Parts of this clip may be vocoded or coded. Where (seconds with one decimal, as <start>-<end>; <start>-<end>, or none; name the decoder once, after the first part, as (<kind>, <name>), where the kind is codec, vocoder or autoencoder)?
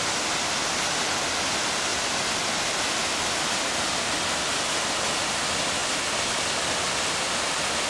none